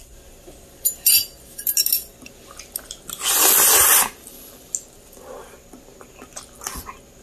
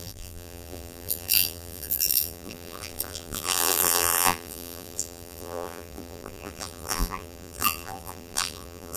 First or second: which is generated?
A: second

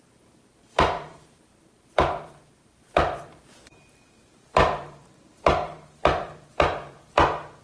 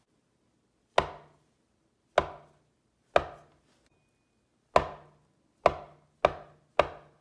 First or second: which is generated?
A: first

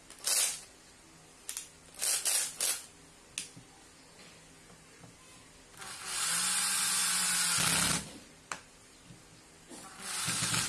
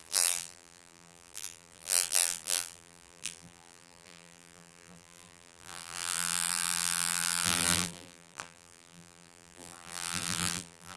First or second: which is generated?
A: second